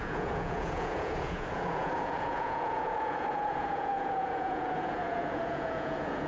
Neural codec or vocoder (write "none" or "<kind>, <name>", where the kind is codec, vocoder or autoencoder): vocoder, Vocos